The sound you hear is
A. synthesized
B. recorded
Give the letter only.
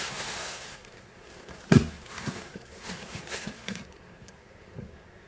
A